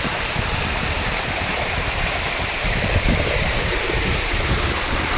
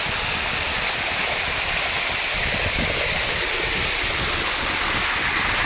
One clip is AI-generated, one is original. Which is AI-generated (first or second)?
first